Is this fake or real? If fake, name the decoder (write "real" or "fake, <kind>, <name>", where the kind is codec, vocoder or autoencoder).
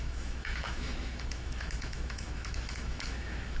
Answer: fake, autoencoder, DAC-VAE